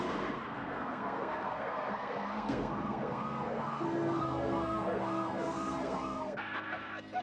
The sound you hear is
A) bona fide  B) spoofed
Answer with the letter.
B